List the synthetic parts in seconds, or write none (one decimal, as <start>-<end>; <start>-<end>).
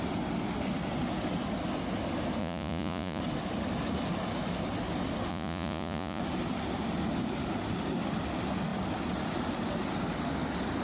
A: 2.4-3.2; 5.3-6.2